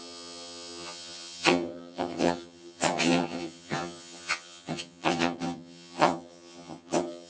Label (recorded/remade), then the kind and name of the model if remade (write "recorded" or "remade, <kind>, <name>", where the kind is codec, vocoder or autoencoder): remade, vocoder, HiFi-GAN